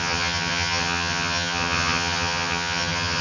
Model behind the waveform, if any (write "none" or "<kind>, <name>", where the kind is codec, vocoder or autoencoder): vocoder, HiFi-GAN